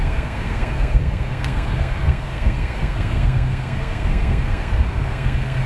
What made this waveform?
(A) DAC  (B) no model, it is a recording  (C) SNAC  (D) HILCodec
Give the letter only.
C